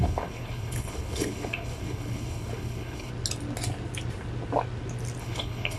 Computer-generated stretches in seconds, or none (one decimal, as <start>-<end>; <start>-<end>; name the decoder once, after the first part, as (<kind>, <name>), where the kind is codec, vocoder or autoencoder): 0.0-3.1 (codec, HILCodec); 5.2-5.8